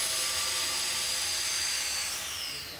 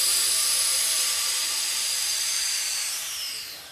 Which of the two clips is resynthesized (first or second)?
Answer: second